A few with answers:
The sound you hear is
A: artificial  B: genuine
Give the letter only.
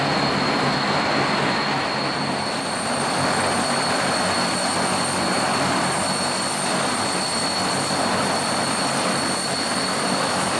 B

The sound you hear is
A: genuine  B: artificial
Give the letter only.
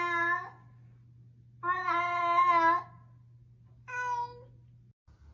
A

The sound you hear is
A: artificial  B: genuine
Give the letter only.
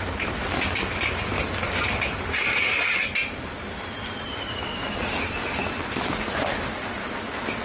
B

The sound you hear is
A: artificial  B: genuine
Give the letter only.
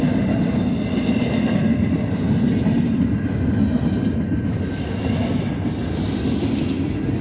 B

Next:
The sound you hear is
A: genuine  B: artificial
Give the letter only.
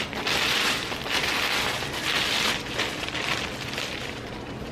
A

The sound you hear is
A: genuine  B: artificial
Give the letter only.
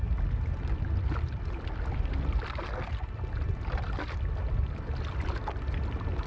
A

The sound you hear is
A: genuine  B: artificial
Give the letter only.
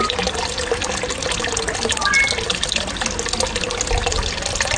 A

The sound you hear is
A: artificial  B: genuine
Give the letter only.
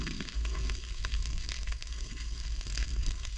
A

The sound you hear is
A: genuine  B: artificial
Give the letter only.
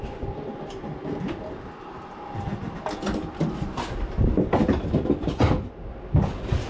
A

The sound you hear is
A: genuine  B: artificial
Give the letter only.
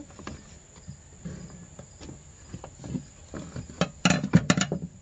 A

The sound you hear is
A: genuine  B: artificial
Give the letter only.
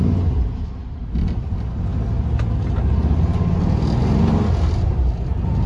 A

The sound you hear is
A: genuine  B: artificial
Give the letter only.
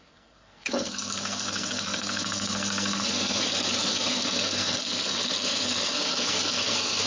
B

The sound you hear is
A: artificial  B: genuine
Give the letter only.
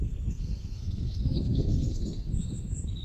A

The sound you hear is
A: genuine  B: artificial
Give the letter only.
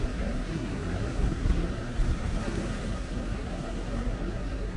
B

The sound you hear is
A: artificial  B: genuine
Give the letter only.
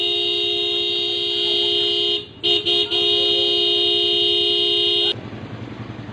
B